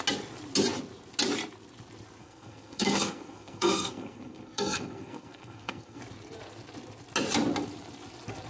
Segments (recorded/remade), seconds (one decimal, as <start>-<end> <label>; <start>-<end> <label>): 0.0-2.2 recorded; 2.2-6.0 remade; 6.0-8.5 recorded